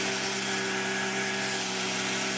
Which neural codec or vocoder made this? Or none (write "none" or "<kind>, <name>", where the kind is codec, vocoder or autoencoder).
none